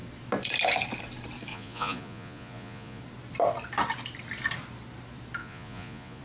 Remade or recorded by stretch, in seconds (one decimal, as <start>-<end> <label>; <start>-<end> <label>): 0.0-1.5 recorded; 1.5-3.0 remade; 3.0-5.4 recorded; 5.4-6.2 remade